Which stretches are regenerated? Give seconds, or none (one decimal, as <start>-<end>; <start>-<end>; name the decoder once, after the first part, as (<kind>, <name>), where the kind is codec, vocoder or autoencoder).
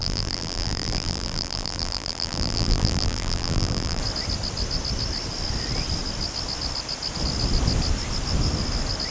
0.0-4.0 (vocoder, BigVGAN v2)